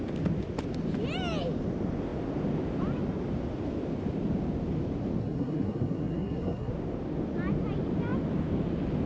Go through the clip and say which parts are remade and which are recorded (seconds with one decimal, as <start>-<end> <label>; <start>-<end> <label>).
0.0-5.2 recorded; 5.2-6.7 remade; 6.7-9.1 recorded